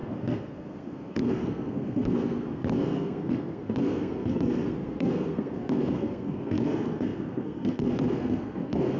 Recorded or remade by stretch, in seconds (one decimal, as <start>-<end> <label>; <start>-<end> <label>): 0.0-9.0 remade

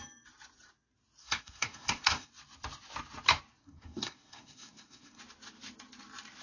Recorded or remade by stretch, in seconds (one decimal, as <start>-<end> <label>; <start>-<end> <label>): 0.0-1.2 recorded; 1.2-2.3 remade; 2.3-3.6 recorded; 3.6-5.2 remade; 5.2-6.4 recorded

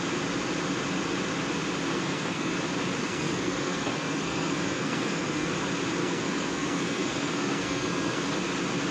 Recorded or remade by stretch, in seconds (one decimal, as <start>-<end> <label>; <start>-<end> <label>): 0.0-1.9 recorded; 1.9-2.5 remade; 2.5-3.0 recorded; 3.0-5.5 remade; 5.5-6.0 recorded; 6.0-8.2 remade; 8.2-8.9 recorded

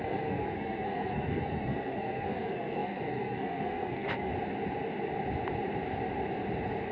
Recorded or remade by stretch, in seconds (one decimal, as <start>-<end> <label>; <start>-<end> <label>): 0.0-4.3 remade; 4.3-6.9 recorded